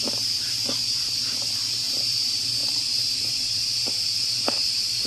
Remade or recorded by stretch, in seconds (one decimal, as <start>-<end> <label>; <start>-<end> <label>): 0.0-5.1 remade

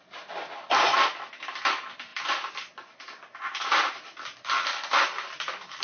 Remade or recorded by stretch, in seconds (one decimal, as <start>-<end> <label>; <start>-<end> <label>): 0.0-5.8 recorded

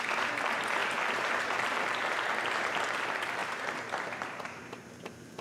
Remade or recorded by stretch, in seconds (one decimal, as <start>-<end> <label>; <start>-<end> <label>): 0.0-0.8 recorded; 0.8-2.1 remade; 2.1-3.4 recorded; 3.4-5.4 remade

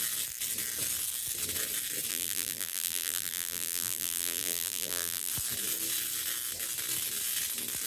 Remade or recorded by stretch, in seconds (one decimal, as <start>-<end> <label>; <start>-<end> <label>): 0.0-2.1 recorded; 2.1-5.3 remade; 5.3-7.9 recorded

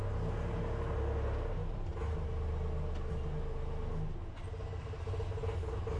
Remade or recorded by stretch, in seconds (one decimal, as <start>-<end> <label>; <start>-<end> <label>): 0.0-6.0 recorded

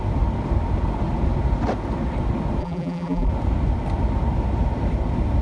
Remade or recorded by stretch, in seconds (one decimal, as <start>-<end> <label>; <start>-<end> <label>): 0.0-2.6 recorded; 2.6-3.3 remade; 3.3-5.4 recorded

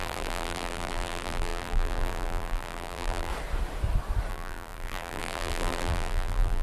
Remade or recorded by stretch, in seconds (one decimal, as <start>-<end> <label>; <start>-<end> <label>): 0.0-3.3 remade; 3.3-4.3 recorded; 4.3-6.6 remade

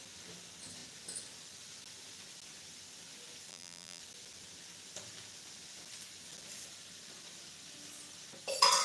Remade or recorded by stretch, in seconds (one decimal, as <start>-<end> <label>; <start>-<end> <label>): 0.0-3.5 recorded; 3.5-4.0 remade; 4.0-8.8 recorded